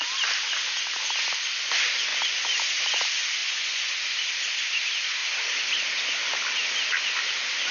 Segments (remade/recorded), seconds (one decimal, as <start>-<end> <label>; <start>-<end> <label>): 0.0-3.4 recorded; 3.4-3.9 remade; 3.9-7.7 recorded